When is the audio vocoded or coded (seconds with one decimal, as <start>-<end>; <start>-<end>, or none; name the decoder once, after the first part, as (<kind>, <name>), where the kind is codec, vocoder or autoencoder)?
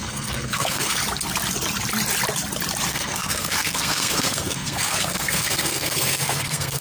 0.0-1.0 (codec, SNAC); 2.9-6.8